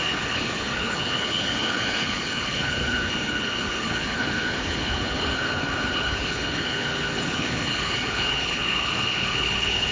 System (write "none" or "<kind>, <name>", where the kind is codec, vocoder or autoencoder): codec, HILCodec